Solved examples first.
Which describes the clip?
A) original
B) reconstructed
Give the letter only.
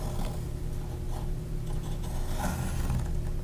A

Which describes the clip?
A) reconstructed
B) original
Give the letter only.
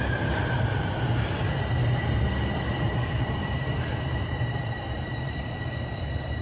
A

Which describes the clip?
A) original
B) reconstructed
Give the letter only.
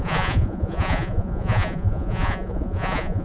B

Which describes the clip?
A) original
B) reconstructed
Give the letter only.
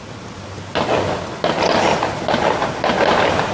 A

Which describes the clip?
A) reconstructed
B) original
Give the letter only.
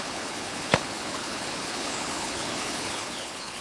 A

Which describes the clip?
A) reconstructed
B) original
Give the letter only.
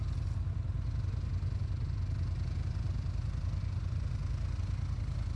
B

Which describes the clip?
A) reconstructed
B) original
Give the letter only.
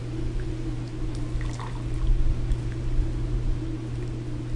B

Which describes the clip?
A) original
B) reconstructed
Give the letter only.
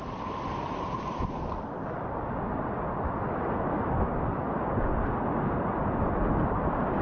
A